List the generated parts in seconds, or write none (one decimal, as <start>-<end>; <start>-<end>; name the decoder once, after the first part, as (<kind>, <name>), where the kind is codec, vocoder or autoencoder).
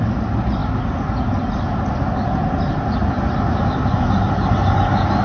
none